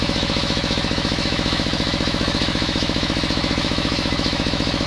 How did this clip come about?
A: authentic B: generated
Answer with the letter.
B